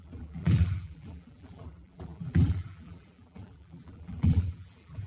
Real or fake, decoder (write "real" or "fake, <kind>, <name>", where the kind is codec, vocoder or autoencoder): fake, vocoder, BigVGAN v2